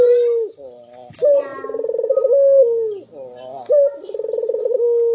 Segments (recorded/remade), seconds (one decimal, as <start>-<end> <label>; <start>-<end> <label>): 0.0-5.1 recorded